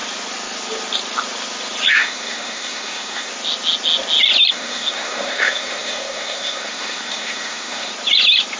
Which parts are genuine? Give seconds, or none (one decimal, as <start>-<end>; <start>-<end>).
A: 0.0-1.9; 3.3-4.5; 7.9-8.6